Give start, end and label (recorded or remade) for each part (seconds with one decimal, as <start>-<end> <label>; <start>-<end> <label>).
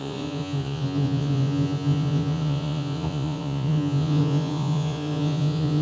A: 0.0-5.8 remade